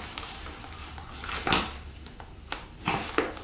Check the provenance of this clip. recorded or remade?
remade